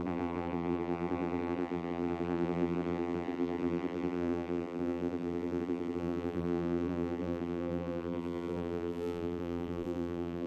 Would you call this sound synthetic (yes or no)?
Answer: yes